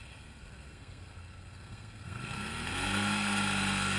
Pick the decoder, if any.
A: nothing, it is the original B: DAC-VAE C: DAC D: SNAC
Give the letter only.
D